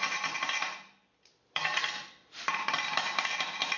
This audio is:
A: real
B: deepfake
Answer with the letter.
B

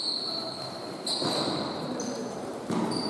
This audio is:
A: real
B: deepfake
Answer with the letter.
B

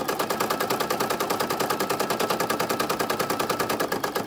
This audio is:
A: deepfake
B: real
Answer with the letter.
B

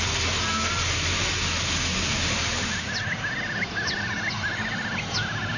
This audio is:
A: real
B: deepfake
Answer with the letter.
A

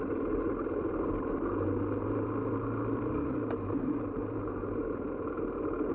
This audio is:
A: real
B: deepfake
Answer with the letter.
A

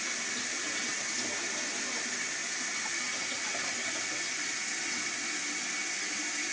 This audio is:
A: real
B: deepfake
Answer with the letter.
A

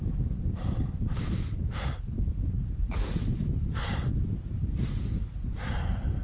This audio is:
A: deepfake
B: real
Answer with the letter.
A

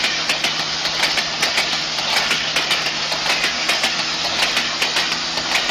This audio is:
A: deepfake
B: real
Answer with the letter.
B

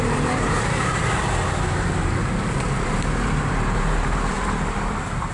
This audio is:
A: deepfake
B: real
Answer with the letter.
A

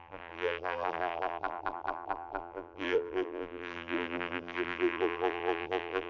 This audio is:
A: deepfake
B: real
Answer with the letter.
A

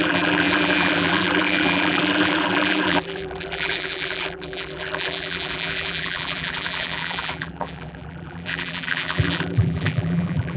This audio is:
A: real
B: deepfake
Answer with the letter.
B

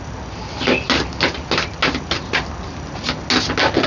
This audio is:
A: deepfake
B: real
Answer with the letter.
B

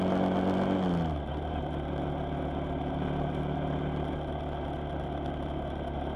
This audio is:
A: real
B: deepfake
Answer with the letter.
A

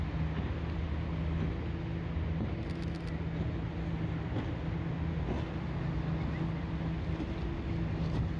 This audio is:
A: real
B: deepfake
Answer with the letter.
A